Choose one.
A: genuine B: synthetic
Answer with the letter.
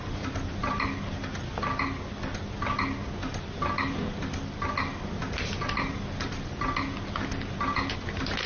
A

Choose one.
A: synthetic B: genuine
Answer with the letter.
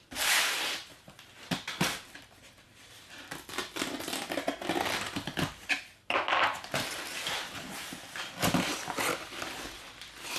B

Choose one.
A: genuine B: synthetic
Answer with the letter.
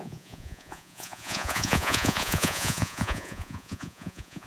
B